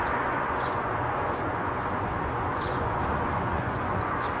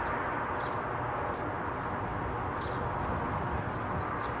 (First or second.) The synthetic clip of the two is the first